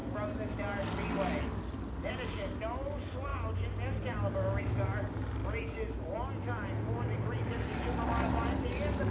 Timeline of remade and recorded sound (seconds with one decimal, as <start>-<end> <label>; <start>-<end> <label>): 0.0-9.1 recorded